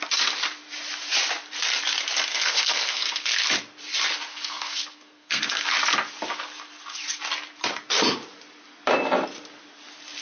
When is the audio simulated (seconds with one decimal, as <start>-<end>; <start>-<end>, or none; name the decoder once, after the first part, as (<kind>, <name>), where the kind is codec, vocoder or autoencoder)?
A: 2.3-3.5 (codec, SNAC); 4.3-5.4